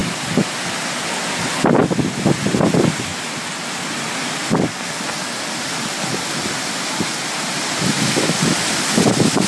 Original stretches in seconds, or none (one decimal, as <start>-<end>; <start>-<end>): 0.0-9.5